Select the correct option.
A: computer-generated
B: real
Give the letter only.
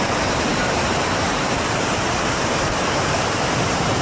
A